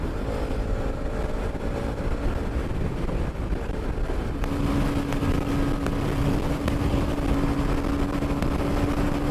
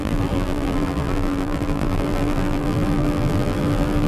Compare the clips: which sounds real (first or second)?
first